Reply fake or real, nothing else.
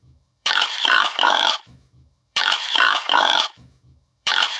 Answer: fake